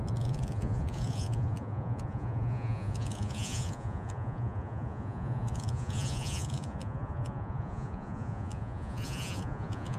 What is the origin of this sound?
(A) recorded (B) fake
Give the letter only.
B